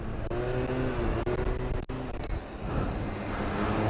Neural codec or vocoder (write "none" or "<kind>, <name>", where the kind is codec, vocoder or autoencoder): none